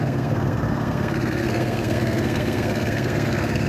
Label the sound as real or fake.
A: fake